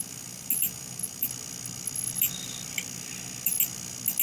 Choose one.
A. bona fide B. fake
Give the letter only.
A